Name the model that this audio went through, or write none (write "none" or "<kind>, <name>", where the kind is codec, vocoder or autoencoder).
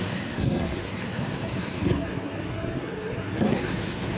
codec, SNAC